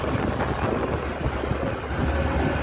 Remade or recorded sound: recorded